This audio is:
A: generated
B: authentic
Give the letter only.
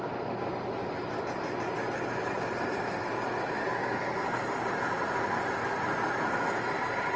B